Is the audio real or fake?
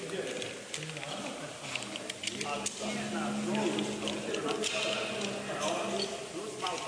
real